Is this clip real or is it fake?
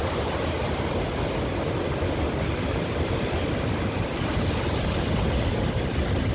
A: real